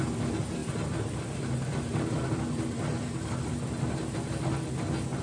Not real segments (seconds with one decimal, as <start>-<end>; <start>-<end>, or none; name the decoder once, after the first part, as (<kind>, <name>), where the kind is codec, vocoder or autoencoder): 0.6-3.7 (vocoder, BigVGAN v2)